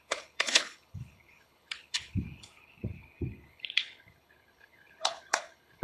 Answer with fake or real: fake